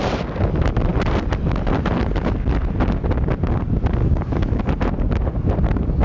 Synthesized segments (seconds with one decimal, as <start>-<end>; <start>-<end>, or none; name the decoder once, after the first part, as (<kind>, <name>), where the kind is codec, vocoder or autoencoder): 4.0-4.6 (codec, DAC)